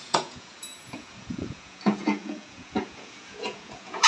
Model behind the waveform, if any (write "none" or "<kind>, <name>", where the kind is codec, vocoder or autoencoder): vocoder, Vocos